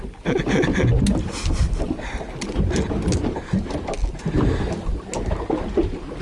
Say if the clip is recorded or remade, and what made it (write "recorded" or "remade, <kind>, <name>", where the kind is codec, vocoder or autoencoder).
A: recorded